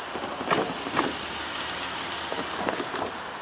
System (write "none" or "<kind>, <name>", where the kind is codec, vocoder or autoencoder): none